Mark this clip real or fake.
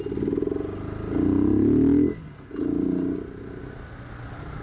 real